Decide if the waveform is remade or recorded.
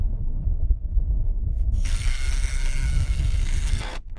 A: remade